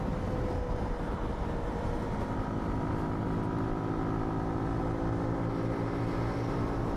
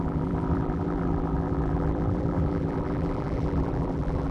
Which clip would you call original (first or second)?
first